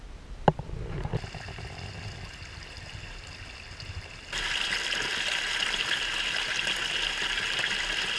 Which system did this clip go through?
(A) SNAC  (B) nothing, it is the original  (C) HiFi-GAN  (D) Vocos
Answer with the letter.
B